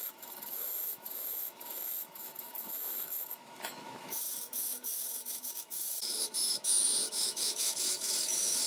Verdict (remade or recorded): remade